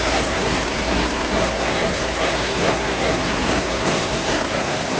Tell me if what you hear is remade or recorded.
remade